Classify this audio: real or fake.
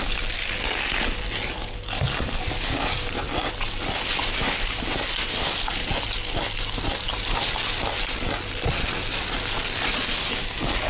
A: real